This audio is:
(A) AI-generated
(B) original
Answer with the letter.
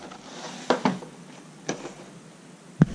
B